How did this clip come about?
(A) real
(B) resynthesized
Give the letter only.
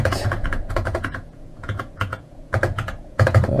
B